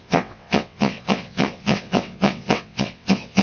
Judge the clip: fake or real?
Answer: fake